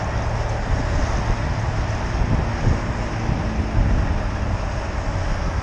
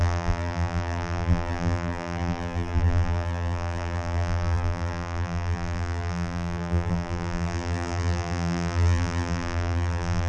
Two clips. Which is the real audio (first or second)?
first